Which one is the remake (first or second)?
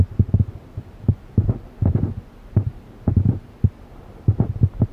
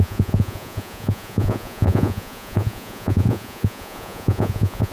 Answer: second